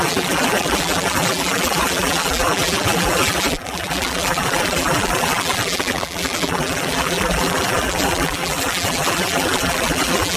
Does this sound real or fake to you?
fake